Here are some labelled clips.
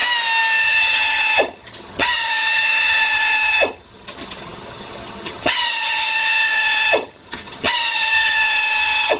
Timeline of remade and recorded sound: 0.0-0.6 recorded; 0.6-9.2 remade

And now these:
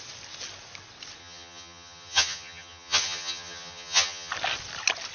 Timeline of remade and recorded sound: 0.0-1.2 recorded; 1.2-4.3 remade; 4.3-5.1 recorded

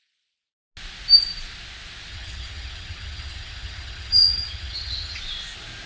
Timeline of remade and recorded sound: 0.0-2.1 recorded; 2.1-5.2 remade; 5.2-5.9 recorded

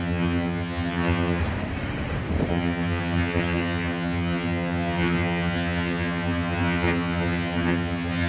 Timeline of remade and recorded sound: 0.0-1.4 remade; 1.4-2.5 recorded; 2.5-8.3 remade

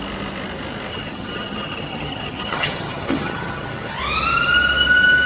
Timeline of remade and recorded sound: 0.0-0.9 recorded; 0.9-4.0 remade; 4.0-5.3 recorded

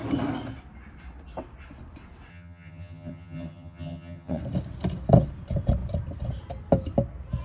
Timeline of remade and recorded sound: 0.0-2.3 recorded; 2.3-4.4 remade; 4.4-7.4 recorded

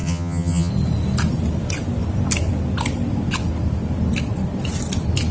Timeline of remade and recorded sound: 0.0-0.7 remade; 0.7-5.3 recorded